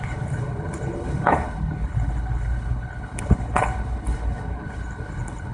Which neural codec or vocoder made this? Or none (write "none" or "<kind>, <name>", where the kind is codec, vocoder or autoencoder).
codec, HILCodec